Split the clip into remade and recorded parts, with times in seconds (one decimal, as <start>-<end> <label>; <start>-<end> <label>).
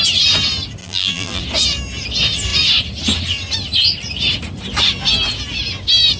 0.0-0.8 recorded; 0.8-1.4 remade; 1.4-6.2 recorded